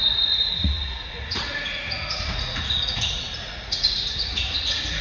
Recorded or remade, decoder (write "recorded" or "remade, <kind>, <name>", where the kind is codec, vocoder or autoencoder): remade, vocoder, Vocos